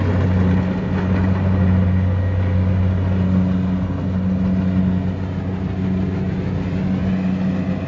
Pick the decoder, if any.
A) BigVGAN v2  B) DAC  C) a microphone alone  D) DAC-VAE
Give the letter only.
C